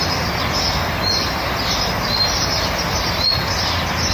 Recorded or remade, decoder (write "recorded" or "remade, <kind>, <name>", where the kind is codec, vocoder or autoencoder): recorded